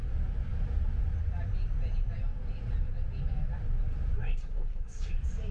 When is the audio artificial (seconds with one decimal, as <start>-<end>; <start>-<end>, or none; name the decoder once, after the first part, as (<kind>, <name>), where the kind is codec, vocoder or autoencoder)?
4.2-5.1 (codec, SNAC)